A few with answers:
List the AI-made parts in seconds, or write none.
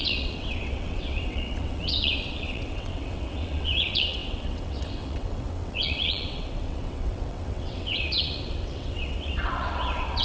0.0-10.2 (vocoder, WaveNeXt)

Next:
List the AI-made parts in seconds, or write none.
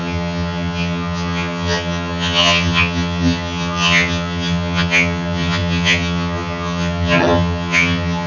0.0-8.3 (vocoder, HiFi-GAN)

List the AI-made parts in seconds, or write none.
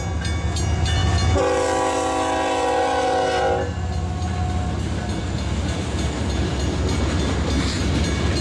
none